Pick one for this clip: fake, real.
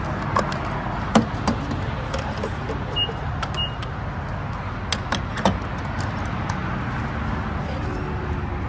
real